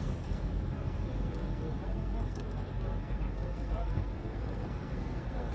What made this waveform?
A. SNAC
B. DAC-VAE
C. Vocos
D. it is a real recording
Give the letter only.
A